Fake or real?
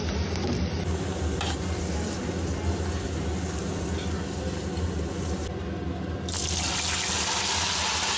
real